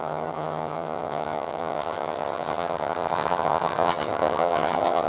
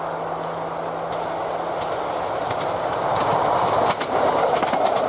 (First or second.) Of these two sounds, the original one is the second